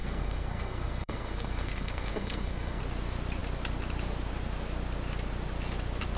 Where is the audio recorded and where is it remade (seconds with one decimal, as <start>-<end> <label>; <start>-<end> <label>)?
0.0-2.8 remade; 2.8-6.2 recorded